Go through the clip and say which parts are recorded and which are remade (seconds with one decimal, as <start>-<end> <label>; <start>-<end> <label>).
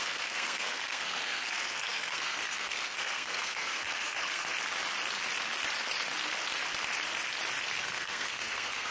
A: 0.0-4.5 remade; 4.5-7.8 recorded; 7.8-8.9 remade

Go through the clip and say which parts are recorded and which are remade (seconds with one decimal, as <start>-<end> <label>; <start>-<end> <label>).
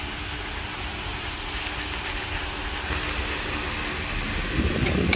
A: 0.0-1.1 recorded; 1.1-1.6 remade; 1.6-5.2 recorded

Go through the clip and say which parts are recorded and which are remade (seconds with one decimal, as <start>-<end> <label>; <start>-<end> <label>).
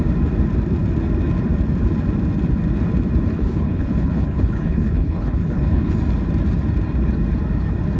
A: 0.0-3.3 recorded; 3.3-5.9 remade; 5.9-8.0 recorded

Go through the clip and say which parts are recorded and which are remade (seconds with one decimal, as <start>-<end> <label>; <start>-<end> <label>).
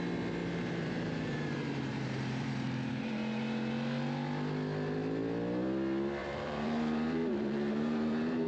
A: 0.0-0.4 recorded; 0.4-2.9 remade; 2.9-6.2 recorded; 6.2-8.5 remade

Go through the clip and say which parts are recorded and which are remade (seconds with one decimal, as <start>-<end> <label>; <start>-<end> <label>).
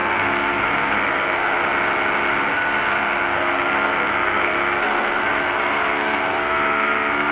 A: 0.0-1.6 remade; 1.6-2.5 recorded; 2.5-7.3 remade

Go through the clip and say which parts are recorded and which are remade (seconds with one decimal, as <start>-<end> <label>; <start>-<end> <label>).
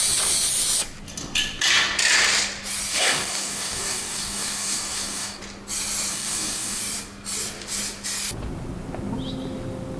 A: 0.0-2.9 recorded; 2.9-5.4 remade; 5.4-6.1 recorded; 6.1-6.8 remade; 6.8-10.0 recorded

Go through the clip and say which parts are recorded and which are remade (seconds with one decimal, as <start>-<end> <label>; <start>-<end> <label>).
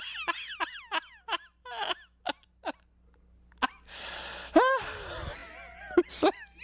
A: 0.0-6.6 recorded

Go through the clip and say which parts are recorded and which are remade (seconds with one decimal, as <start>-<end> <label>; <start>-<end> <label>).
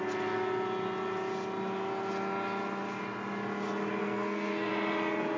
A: 0.0-4.0 recorded; 4.0-4.7 remade; 4.7-5.4 recorded